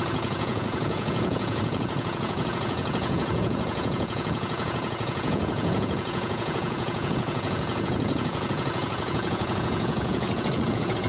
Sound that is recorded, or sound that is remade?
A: remade